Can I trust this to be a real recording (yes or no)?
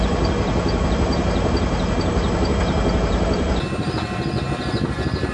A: yes